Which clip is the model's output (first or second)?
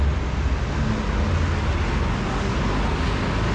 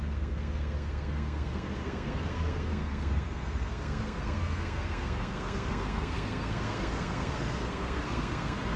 second